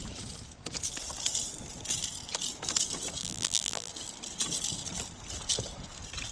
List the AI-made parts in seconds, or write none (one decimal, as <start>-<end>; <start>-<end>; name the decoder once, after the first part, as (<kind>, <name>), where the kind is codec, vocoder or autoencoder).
3.2-3.9 (vocoder, BigVGAN v2)